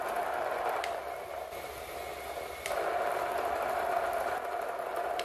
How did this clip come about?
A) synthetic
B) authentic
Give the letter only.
B